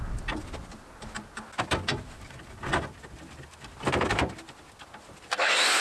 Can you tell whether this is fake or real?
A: real